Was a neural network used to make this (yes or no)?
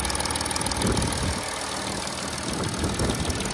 no